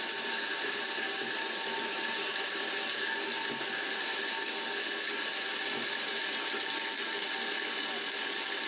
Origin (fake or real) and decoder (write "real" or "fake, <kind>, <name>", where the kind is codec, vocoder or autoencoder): real